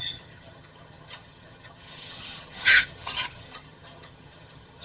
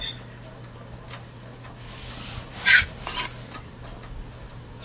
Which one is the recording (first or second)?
second